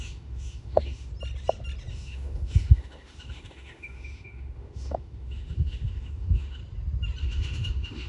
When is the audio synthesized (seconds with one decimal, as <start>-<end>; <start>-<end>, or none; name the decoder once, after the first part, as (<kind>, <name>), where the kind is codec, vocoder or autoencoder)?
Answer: 0.0-1.1 (autoencoder, DAC-VAE); 1.9-6.6; 7.2-8.1